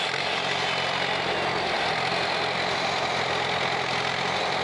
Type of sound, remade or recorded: recorded